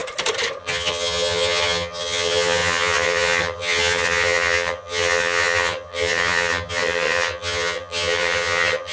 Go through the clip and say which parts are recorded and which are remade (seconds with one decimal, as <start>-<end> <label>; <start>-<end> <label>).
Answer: 0.0-0.6 recorded; 0.6-8.9 remade